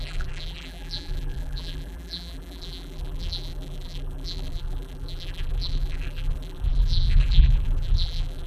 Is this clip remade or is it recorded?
remade